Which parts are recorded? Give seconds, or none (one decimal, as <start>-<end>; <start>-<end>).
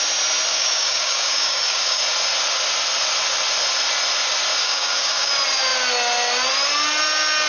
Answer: 0.0-0.5; 2.0-4.6; 5.3-7.5